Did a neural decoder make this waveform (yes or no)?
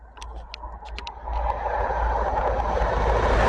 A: no